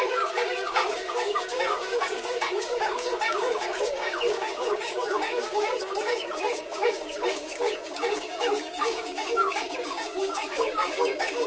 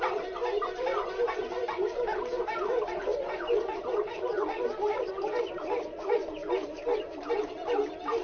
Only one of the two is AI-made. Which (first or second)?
first